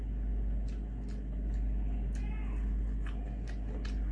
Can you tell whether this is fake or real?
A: real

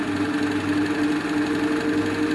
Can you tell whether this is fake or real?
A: real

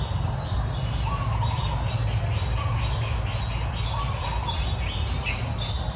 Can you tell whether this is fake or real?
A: real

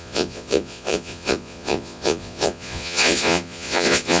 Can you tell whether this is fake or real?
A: fake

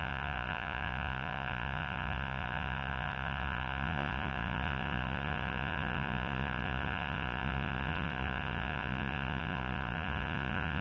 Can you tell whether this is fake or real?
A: fake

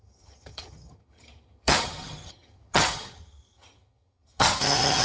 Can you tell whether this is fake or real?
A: fake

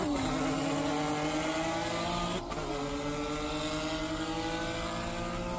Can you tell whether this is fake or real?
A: real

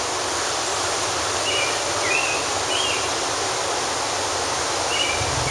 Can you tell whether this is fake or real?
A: real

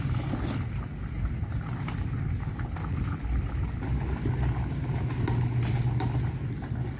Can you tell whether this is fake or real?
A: real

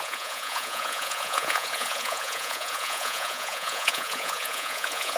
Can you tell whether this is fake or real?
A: fake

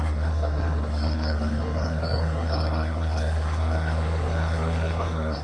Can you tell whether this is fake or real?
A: fake